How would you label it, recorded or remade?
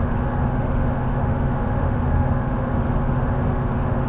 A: remade